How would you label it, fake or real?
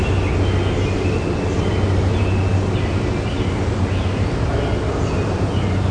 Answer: real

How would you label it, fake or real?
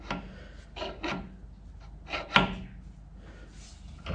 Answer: real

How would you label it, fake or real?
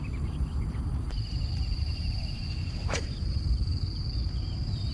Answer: fake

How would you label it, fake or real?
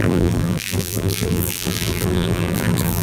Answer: fake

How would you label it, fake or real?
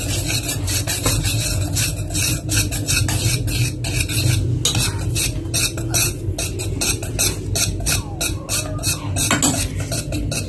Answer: real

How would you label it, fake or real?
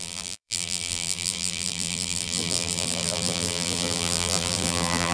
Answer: fake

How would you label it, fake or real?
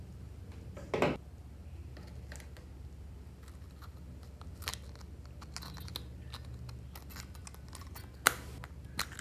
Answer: real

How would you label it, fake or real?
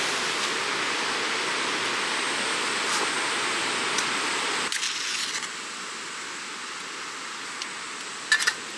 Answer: real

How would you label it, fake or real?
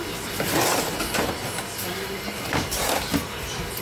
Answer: real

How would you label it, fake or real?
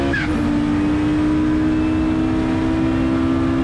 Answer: real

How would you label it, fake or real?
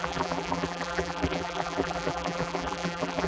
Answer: fake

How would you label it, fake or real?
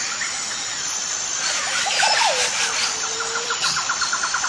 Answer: fake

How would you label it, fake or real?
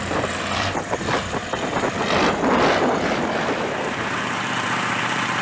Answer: fake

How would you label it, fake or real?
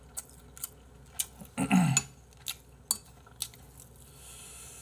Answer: real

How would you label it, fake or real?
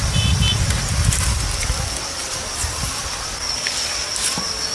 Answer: fake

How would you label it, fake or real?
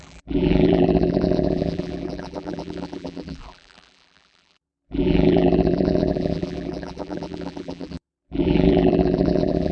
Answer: fake